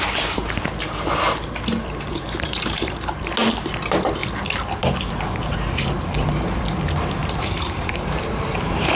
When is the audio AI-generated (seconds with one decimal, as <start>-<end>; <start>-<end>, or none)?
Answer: 2.1-3.2; 7.2-9.0